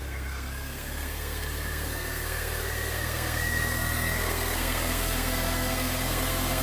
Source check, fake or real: fake